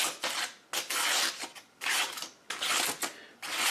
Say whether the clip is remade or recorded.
recorded